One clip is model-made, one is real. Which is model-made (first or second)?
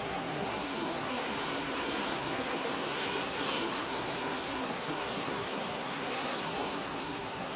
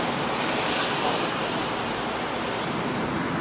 first